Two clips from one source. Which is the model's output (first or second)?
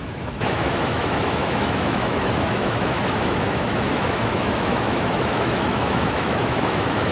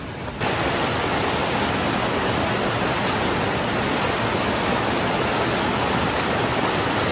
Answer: first